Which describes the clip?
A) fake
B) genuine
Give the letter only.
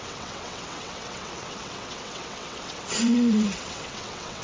A